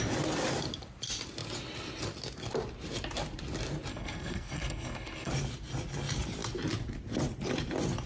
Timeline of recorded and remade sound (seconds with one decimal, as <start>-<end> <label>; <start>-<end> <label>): 0.0-3.9 recorded; 3.9-5.3 remade; 5.3-8.1 recorded